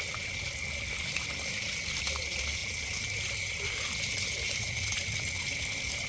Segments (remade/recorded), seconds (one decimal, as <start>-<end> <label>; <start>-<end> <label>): 0.0-6.1 recorded